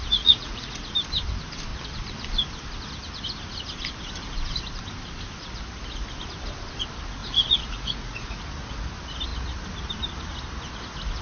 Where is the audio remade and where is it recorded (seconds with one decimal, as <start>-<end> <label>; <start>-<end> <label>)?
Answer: 0.0-0.8 remade; 0.8-7.2 recorded; 7.2-8.4 remade; 8.4-11.2 recorded